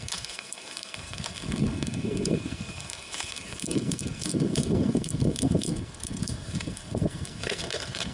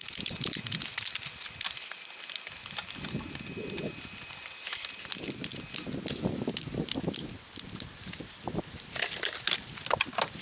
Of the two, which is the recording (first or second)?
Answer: second